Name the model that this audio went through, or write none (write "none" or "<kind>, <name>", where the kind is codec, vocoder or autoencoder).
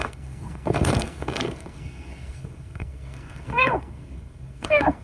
codec, SNAC